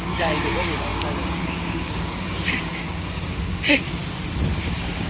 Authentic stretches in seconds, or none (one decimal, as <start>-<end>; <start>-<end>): 4.0-4.6